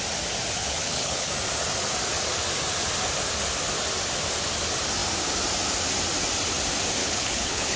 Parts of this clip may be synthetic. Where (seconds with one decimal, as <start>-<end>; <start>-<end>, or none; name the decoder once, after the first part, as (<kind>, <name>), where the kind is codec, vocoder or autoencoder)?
0.6-1.3 (codec, HILCodec); 7.0-7.8